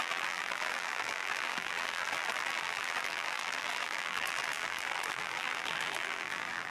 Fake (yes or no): yes